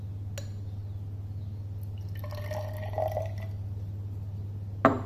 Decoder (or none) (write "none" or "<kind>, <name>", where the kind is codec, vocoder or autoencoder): none